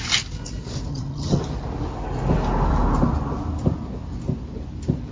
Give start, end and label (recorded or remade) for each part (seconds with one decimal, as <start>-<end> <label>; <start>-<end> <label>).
0.0-0.9 recorded; 0.9-1.4 remade; 1.4-5.1 recorded